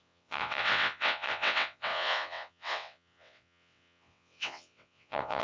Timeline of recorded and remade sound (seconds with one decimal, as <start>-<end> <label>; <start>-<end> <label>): 0.0-5.4 remade